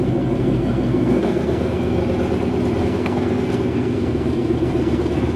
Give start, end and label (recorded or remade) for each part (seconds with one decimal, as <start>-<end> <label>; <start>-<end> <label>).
0.0-2.0 remade; 2.0-2.8 recorded; 2.8-5.4 remade